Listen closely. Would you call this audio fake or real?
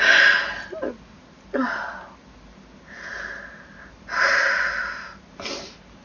real